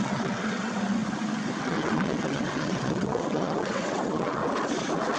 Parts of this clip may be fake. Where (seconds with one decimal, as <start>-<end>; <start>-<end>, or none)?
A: 0.0-1.0; 1.6-4.4